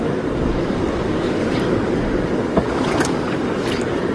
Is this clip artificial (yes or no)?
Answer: yes